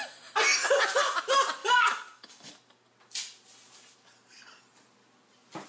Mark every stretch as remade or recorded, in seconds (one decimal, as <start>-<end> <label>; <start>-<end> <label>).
0.0-1.6 recorded; 1.6-2.5 remade; 2.5-5.7 recorded